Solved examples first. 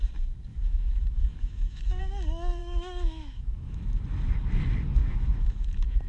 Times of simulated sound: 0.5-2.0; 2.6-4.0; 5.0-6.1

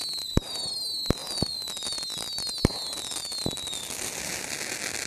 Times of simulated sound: none

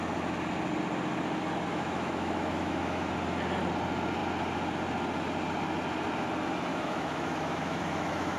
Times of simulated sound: 1.7-3.1; 6.7-8.4

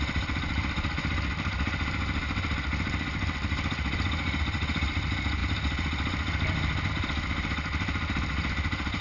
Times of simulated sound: none

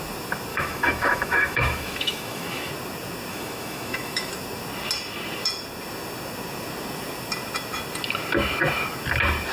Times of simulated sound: 0.5-2.7; 3.3-4.3

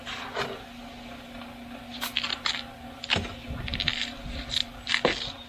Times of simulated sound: none

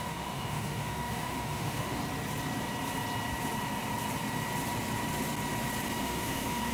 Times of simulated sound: 0.0-2.0; 6.0-6.7

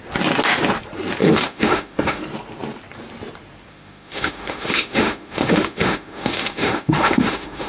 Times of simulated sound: 1.2-2.2; 3.7-7.7